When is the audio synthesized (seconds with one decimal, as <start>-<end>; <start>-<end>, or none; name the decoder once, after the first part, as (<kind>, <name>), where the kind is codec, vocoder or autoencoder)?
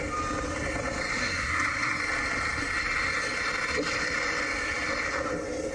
1.2-2.0 (codec, SNAC)